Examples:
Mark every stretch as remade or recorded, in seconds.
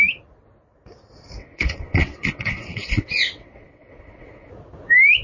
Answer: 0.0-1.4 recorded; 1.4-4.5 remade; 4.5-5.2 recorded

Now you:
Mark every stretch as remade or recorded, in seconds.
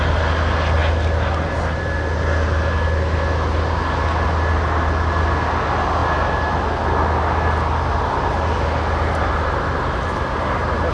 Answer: 0.0-10.9 recorded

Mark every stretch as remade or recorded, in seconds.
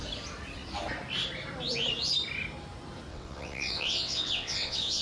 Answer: 0.0-3.1 recorded; 3.1-5.0 remade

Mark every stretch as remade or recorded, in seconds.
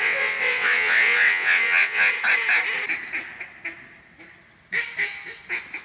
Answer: 0.0-2.1 remade; 2.1-5.8 recorded